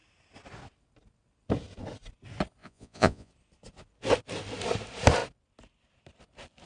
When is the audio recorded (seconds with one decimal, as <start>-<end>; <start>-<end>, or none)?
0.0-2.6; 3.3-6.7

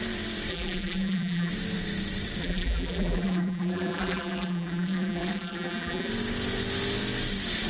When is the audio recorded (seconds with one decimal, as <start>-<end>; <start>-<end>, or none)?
0.0-0.5; 1.5-2.4; 6.1-7.7

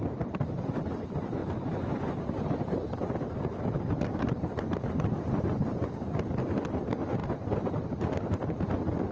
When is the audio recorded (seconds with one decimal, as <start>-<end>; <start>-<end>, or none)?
0.0-1.4; 5.9-7.2; 8.1-9.1

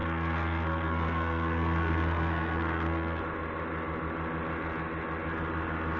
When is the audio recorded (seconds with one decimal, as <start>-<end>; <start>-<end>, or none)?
3.2-6.0

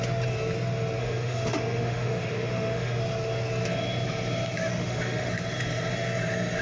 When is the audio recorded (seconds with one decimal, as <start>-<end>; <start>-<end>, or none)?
0.0-1.0; 3.0-4.7; 5.3-6.6

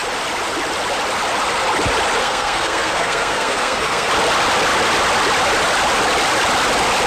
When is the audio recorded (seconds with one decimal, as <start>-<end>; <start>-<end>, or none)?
0.0-2.2; 4.1-7.1